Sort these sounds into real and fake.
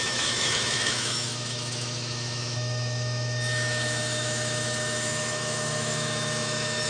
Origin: fake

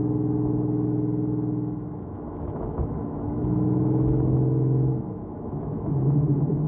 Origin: fake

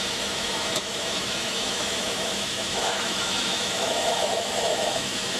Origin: fake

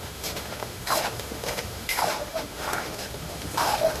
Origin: fake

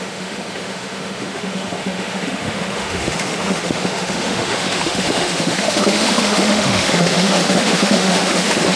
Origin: fake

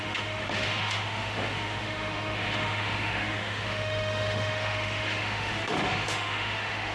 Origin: fake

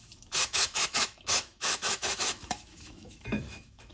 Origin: fake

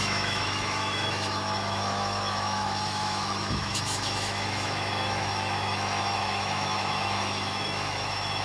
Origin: fake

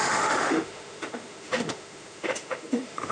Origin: fake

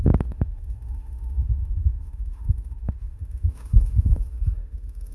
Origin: fake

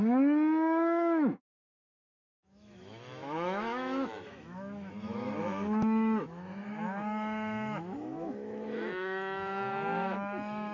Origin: fake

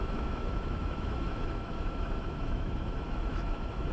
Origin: fake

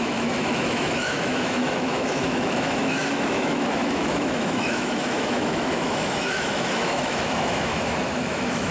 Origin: fake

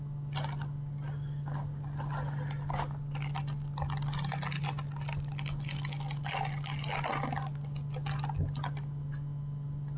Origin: real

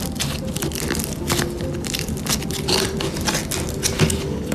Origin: real